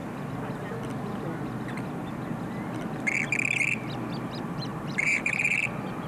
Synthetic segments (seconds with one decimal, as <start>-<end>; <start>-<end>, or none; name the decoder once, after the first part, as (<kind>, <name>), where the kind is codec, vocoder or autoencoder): 4.7-5.4 (vocoder, BigVGAN v2)